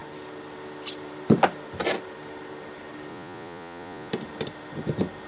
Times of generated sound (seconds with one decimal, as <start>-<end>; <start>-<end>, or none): 3.1-4.1